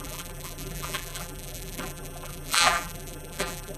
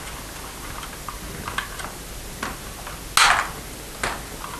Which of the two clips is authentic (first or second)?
second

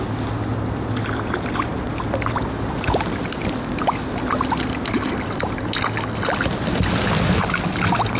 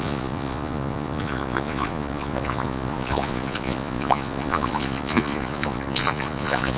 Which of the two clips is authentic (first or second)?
first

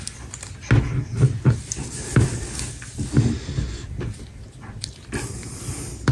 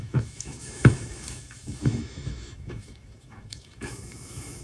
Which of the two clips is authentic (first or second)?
first